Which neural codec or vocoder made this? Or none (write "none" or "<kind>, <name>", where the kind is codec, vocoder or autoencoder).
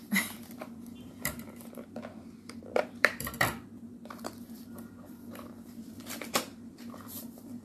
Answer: vocoder, BigVGAN v2